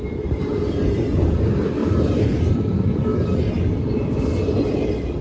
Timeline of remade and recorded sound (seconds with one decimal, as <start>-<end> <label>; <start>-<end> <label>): 0.0-1.8 recorded; 1.8-2.4 remade; 2.4-5.2 recorded